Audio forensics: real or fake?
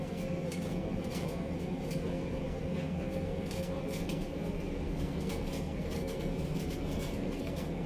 fake